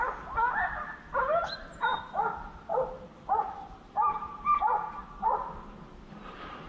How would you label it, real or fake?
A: real